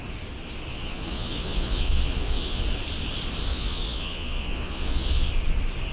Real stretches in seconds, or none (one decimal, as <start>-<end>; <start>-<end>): 0.0-0.7; 2.6-3.5; 5.3-5.9